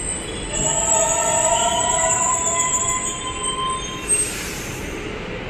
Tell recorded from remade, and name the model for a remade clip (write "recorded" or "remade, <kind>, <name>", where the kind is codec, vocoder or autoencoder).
recorded